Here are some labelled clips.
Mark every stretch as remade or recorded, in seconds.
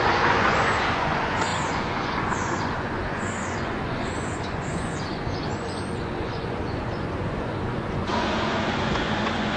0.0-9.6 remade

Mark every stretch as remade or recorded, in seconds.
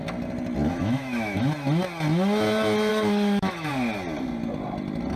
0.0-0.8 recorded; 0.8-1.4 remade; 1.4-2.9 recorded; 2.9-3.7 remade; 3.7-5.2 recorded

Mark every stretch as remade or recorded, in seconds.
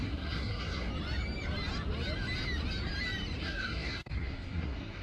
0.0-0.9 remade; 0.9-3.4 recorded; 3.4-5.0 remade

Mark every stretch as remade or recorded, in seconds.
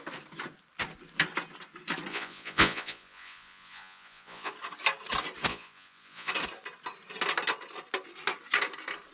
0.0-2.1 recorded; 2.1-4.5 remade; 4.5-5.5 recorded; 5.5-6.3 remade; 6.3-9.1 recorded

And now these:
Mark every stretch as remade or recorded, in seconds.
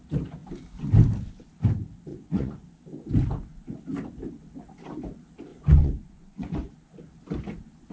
0.0-2.1 recorded; 2.1-2.7 remade; 2.7-5.5 recorded; 5.5-6.7 remade; 6.7-7.9 recorded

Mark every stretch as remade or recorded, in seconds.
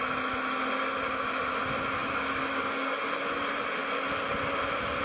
0.0-2.0 recorded; 2.0-3.1 remade; 3.1-5.0 recorded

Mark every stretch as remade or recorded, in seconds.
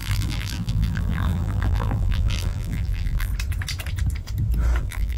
0.0-3.3 remade; 3.3-4.8 recorded; 4.8-5.2 remade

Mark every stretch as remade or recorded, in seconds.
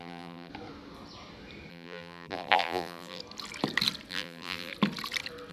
0.0-0.5 remade; 0.5-1.7 recorded; 1.7-3.2 remade; 3.2-4.1 recorded; 4.1-4.7 remade; 4.7-5.5 recorded